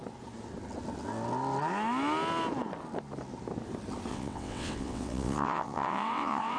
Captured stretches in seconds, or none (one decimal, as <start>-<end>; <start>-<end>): 0.0-4.1